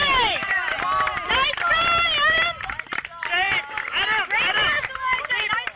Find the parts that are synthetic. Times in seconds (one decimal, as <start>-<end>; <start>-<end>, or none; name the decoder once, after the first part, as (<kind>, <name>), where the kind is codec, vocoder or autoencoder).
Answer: 0.0-0.5 (autoencoder, DAC-VAE)